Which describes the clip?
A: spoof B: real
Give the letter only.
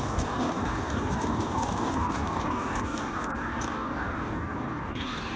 A